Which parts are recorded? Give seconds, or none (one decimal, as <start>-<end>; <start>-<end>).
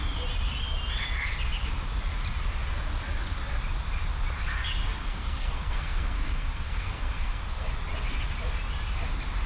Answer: 0.0-5.1; 7.7-9.5